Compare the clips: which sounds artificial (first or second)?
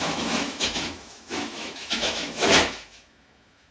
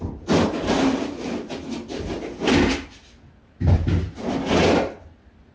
first